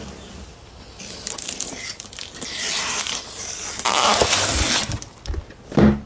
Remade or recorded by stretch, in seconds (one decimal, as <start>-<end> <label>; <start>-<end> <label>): 0.0-6.1 recorded